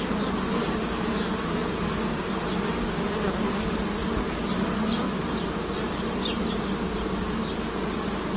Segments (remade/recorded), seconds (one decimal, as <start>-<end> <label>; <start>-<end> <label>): 0.0-8.4 recorded